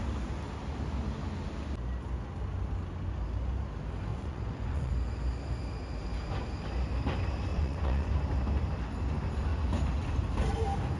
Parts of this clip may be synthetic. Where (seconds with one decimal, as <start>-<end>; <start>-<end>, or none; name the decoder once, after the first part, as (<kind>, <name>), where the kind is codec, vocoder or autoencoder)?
4.1-4.9 (vocoder, Vocos); 7.5-8.1

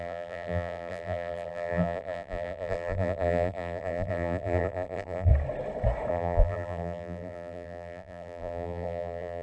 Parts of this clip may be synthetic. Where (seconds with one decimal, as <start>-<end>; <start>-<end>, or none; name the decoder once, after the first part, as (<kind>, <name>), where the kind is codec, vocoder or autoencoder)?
0.0-5.3 (vocoder, BigVGAN v2); 6.1-9.4

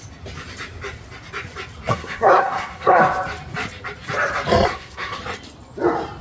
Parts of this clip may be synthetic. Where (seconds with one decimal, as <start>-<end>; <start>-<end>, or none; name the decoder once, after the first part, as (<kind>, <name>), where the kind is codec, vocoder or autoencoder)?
1.9-3.0 (codec, SNAC); 4.7-5.2

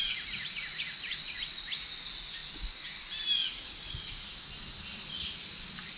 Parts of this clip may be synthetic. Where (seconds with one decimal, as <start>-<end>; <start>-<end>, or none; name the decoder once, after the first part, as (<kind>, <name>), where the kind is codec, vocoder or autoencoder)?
none